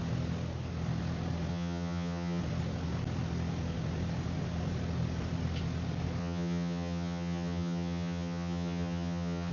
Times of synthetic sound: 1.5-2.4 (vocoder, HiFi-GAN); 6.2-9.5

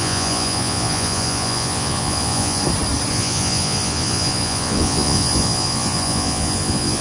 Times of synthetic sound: 0.0-2.6 (vocoder, Vocos); 3.1-7.0

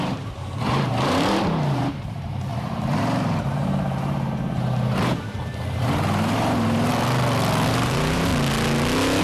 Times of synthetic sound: 0.0-6.9 (vocoder, BigVGAN v2); 7.7-8.3

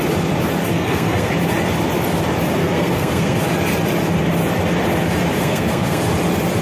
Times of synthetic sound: 0.7-1.3 (codec, SNAC); 2.6-3.4; 5.4-6.0

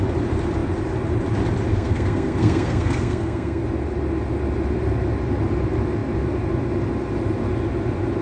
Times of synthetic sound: 1.7-3.6 (codec, SNAC)